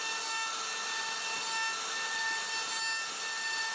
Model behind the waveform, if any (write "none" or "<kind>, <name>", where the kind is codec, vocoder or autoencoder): none